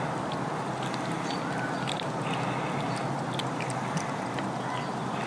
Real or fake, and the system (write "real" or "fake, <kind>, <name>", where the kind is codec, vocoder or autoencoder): real